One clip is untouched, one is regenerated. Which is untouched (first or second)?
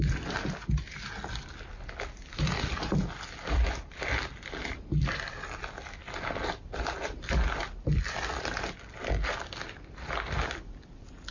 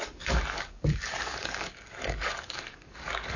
first